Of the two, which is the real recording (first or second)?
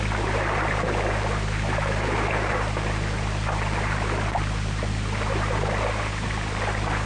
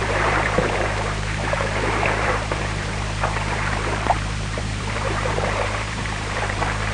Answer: first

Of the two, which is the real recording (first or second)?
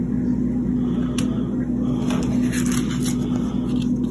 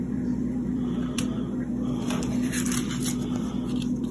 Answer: first